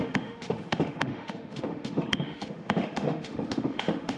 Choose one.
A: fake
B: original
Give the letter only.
A